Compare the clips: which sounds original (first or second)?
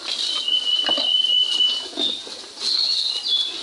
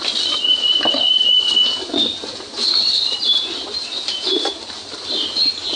first